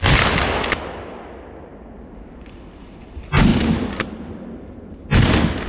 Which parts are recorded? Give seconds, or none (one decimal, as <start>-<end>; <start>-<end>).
0.0-5.7